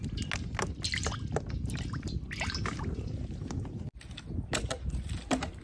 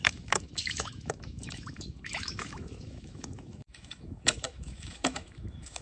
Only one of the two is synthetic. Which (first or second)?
second